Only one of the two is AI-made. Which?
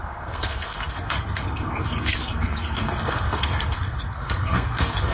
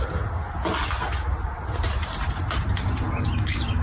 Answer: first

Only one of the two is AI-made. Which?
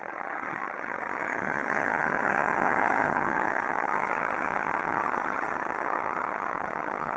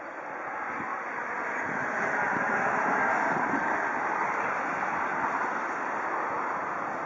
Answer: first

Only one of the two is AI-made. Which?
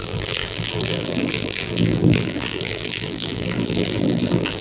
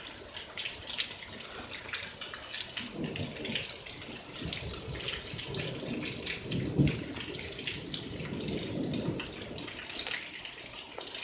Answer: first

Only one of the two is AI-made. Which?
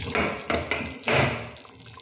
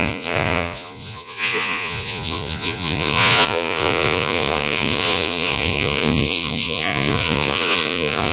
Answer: second